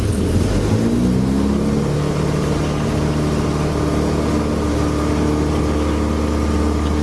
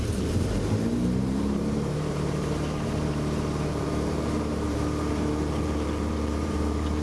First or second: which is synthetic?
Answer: second